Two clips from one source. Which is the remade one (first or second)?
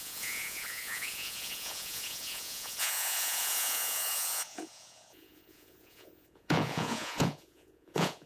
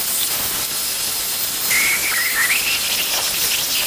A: first